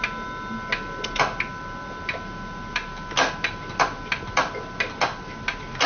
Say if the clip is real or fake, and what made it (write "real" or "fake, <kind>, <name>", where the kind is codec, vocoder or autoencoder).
real